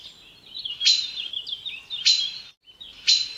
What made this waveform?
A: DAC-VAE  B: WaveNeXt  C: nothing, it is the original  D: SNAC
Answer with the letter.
C